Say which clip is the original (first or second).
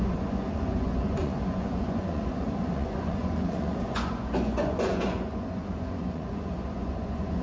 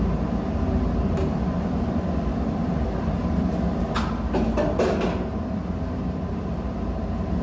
second